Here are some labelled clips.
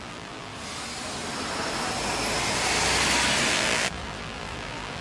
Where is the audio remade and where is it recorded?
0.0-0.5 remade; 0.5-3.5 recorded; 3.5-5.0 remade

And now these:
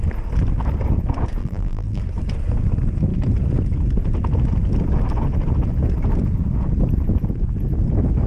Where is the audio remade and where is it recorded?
0.0-1.4 recorded; 1.4-2.0 remade; 2.0-8.3 recorded

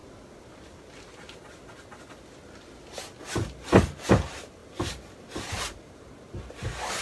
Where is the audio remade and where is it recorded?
0.0-4.1 recorded; 4.1-4.6 remade; 4.6-5.5 recorded; 5.5-7.0 remade

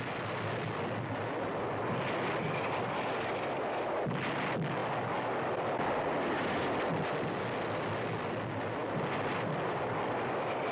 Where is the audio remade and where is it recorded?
0.0-10.7 recorded

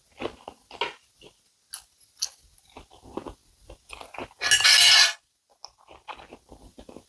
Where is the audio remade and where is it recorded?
0.0-7.1 recorded